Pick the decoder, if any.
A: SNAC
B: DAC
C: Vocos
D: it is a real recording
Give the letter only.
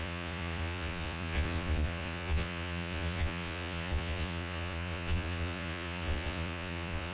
C